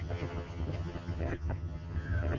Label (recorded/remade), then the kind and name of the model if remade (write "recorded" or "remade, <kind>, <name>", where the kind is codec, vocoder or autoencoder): remade, vocoder, HiFi-GAN